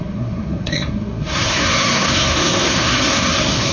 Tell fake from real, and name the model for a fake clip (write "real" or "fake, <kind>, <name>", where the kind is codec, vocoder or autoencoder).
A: fake, codec, SNAC